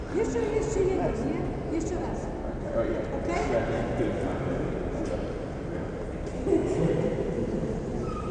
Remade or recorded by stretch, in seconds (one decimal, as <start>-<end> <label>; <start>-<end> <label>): 0.0-6.6 recorded; 6.6-8.3 remade